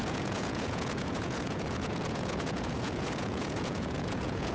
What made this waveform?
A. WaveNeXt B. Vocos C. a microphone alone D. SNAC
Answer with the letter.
B